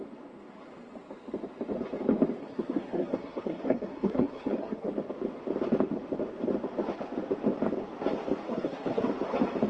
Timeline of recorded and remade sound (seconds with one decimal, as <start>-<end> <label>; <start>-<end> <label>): 0.0-2.4 recorded; 2.4-4.9 remade; 4.9-8.5 recorded; 8.5-9.1 remade; 9.1-9.7 recorded